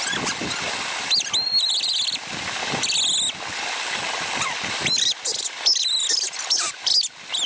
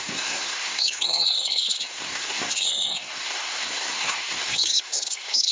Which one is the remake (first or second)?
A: second